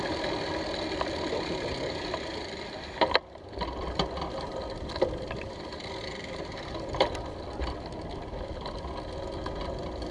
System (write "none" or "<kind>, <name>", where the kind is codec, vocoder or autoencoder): none